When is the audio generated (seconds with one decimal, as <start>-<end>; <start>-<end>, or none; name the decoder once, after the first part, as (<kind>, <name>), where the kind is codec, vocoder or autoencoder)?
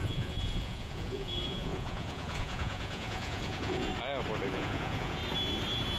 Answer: 0.0-3.9 (vocoder, Vocos); 4.5-5.2